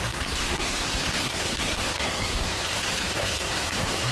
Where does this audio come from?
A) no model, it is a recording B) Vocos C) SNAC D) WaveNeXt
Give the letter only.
C